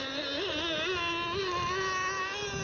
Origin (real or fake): real